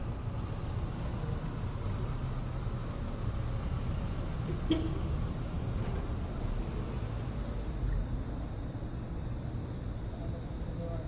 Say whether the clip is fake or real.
real